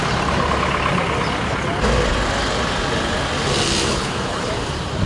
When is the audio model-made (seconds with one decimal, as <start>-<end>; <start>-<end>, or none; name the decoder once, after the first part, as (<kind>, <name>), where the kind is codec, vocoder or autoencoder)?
3.9-4.5 (codec, HILCodec)